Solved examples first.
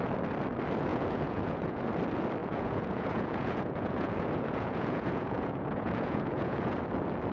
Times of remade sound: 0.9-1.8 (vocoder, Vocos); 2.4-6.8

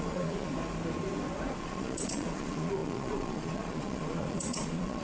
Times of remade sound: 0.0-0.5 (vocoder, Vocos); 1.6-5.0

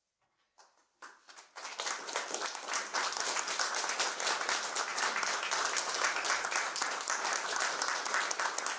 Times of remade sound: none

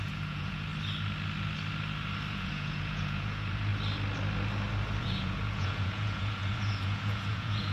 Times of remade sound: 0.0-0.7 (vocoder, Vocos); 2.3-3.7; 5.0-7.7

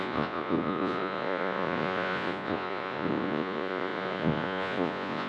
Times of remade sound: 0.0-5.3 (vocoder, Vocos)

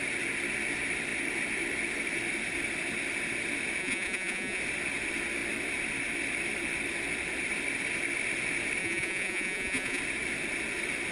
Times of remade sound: 3.8-4.6 (vocoder, Vocos); 8.8-10.0

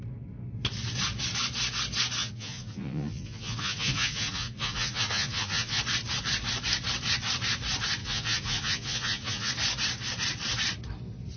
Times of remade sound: 2.2-5.8 (vocoder, Vocos); 8.0-9.5

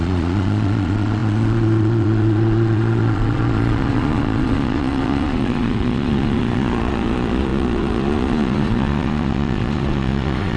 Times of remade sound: 0.0-10.6 (vocoder, Vocos)